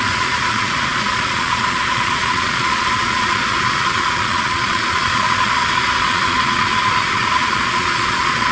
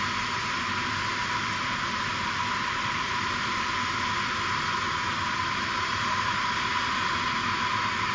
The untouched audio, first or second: second